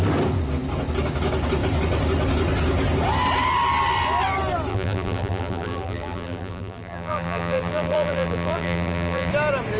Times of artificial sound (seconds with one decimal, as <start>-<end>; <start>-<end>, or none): 4.7-9.3